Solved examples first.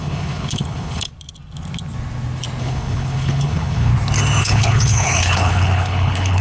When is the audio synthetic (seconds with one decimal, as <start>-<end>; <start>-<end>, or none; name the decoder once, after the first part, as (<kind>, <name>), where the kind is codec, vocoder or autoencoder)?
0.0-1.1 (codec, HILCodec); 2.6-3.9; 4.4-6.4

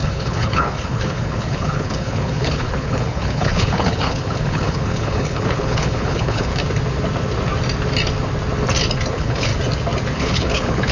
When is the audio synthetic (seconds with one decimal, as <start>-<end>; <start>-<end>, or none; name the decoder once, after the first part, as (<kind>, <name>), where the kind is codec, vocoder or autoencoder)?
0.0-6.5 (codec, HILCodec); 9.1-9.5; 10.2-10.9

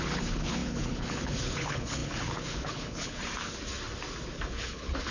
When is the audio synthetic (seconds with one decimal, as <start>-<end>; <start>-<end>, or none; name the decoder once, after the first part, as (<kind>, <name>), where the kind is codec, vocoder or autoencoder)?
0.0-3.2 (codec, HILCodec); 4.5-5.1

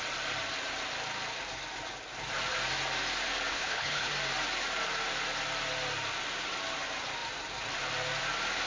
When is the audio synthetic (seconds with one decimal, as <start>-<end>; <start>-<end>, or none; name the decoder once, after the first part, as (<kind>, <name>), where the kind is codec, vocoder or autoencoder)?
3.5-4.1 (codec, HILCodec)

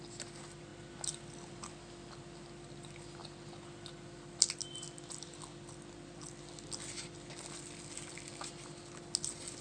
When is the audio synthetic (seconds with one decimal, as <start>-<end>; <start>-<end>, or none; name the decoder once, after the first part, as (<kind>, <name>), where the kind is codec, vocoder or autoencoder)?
none

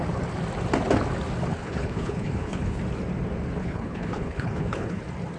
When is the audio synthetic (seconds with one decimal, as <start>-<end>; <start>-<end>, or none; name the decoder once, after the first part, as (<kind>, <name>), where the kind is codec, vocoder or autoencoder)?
1.5-2.8 (codec, HILCodec); 3.6-5.0

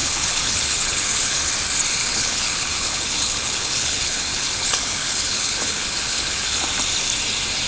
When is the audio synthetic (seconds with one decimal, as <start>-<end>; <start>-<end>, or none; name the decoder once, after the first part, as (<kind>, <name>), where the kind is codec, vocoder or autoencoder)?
0.0-1.4 (codec, HILCodec); 2.0-6.6